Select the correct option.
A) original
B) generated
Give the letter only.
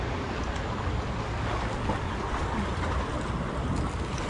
A